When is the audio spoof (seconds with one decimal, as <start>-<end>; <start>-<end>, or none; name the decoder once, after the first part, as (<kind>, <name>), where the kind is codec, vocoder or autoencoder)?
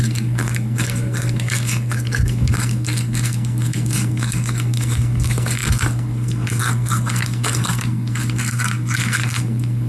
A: 0.0-9.9 (codec, SNAC)